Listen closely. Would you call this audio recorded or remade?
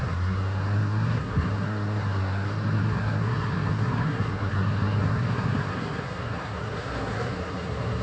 remade